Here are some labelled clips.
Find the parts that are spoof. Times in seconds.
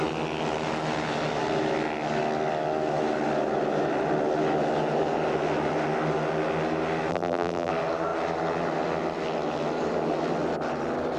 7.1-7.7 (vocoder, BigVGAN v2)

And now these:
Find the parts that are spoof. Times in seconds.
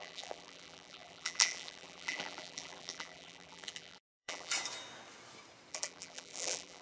0.0-4.5 (vocoder, BigVGAN v2); 5.7-6.8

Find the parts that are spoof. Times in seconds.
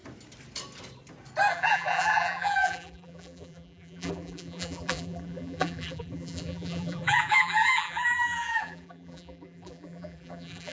1.5-10.7 (vocoder, BigVGAN v2)